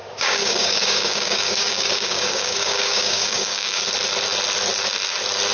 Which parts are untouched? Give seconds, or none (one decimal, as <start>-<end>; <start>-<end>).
3.8-5.5